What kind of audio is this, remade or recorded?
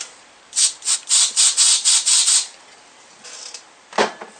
remade